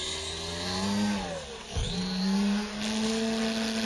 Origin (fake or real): real